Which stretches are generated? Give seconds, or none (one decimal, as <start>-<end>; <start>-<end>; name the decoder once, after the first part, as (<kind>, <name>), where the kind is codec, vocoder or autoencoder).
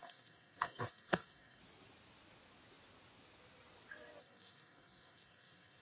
0.0-1.6 (codec, SNAC); 4.2-5.8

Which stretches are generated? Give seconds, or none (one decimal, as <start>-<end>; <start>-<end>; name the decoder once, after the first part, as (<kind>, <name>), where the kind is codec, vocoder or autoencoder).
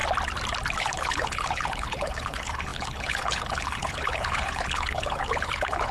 0.8-5.9 (codec, HILCodec)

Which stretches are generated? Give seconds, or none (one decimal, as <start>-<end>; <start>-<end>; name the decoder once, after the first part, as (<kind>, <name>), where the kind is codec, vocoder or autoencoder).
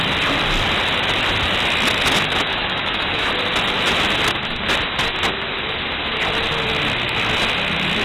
2.5-3.3 (autoencoder, DAC-VAE)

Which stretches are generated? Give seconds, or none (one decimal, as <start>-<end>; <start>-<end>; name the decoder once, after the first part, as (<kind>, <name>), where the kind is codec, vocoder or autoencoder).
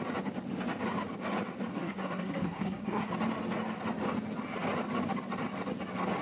1.7-3.1 (codec, SNAC)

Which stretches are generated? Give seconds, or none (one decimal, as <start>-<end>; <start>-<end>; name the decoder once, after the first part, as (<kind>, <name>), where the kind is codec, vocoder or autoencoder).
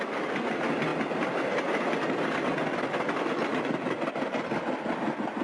none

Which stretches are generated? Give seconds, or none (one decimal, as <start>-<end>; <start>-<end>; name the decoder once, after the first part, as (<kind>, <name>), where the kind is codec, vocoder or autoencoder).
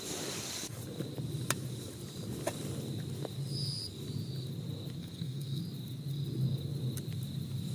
5.0-5.6 (codec, SNAC)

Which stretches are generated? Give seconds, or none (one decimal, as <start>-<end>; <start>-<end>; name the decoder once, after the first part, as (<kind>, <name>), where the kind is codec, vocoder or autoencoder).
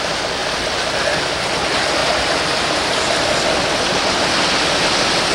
none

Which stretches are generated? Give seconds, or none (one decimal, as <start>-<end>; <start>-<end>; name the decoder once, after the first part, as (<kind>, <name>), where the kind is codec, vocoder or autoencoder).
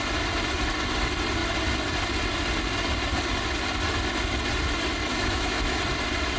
5.1-5.8 (autoencoder, DAC-VAE)